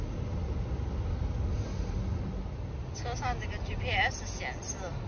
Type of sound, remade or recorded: recorded